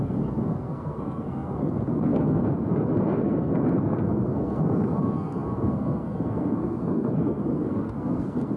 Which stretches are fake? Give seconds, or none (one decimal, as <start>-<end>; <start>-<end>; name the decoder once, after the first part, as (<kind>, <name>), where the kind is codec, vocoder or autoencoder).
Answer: 0.0-8.6 (codec, SNAC)